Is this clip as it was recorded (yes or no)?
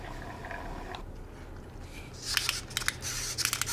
yes